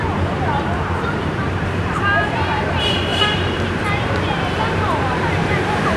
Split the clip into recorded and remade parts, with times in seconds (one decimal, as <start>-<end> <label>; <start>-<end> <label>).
0.0-6.0 remade